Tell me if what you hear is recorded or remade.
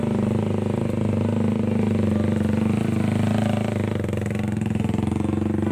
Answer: recorded